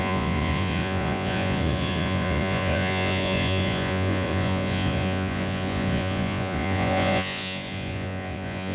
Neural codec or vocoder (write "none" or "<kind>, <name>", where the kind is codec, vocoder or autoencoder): vocoder, Vocos